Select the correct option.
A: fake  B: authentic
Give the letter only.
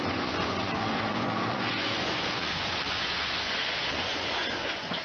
A